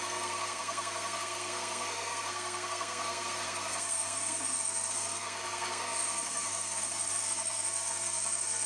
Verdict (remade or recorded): remade